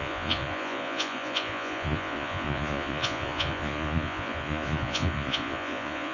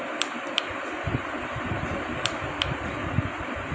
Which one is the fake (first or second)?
first